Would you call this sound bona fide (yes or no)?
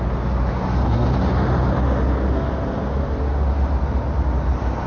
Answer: yes